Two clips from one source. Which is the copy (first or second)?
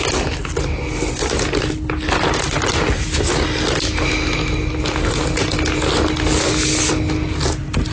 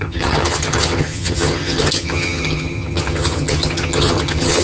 second